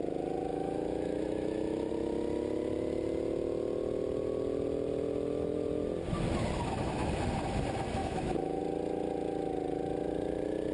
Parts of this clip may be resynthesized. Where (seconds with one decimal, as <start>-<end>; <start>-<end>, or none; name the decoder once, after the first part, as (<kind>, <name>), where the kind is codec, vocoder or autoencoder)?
0.5-1.9 (autoencoder, DAC-VAE); 8.0-8.6